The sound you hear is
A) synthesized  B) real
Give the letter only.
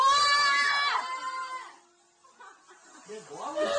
B